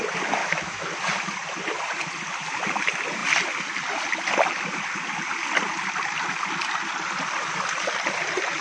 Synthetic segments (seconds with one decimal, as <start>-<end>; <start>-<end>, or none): 0.4-0.9